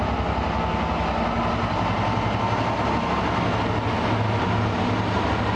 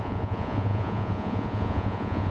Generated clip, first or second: second